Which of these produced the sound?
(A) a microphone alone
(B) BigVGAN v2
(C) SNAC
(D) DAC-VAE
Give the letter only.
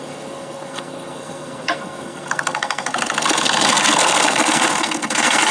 C